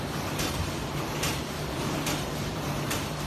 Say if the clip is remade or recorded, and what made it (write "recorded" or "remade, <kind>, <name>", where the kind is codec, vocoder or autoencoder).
remade, vocoder, BigVGAN v2